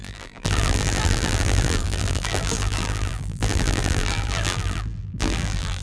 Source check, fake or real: fake